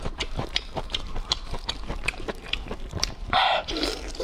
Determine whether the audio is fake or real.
fake